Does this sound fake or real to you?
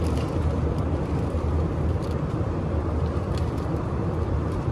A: fake